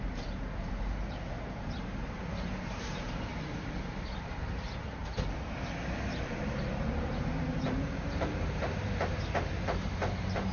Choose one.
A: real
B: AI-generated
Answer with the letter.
B